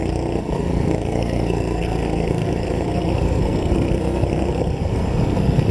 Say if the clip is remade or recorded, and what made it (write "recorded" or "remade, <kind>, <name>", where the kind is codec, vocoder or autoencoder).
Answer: remade, codec, SNAC